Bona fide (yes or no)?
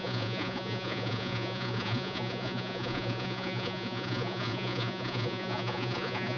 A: no